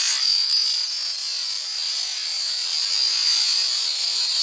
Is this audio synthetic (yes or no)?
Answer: no